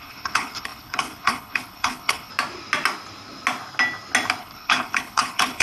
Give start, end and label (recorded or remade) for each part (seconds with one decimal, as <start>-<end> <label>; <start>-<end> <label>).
0.0-2.3 remade; 2.3-4.4 recorded; 4.4-5.6 remade